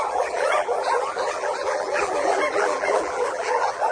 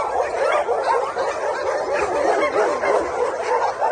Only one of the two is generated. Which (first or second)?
first